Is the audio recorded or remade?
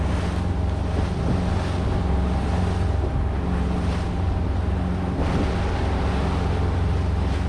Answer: recorded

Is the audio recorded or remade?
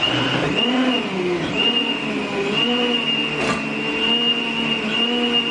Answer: recorded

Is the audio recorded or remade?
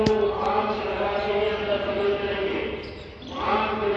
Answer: recorded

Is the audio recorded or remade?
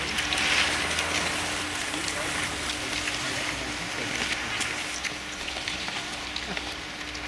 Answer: recorded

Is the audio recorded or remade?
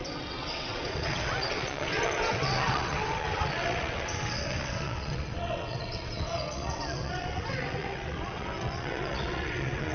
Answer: remade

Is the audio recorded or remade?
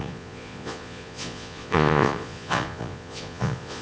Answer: remade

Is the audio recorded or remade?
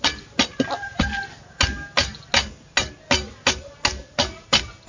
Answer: recorded